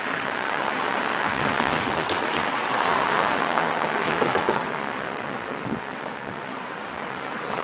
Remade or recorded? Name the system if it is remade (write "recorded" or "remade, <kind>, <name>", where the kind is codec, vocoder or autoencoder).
remade, vocoder, WaveNeXt